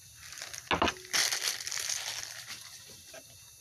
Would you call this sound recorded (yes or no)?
yes